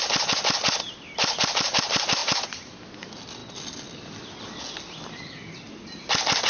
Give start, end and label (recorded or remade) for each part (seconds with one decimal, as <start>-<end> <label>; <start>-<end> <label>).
0.0-6.5 recorded